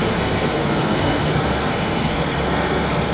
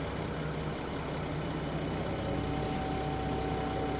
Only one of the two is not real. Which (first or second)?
first